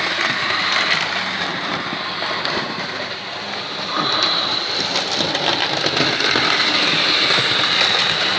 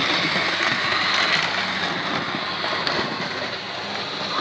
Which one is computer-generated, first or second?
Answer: first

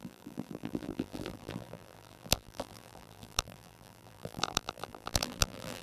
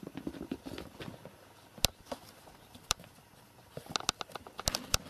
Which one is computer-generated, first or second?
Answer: first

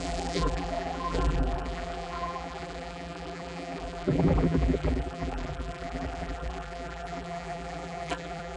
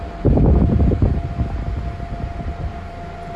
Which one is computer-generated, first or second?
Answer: first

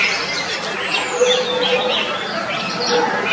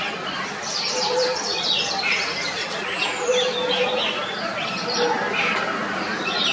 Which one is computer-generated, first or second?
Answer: second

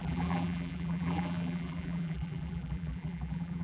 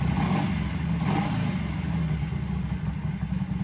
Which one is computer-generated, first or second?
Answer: first